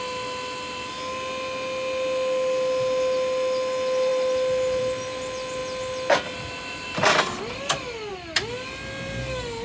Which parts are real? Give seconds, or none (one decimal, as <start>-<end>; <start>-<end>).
0.0-9.6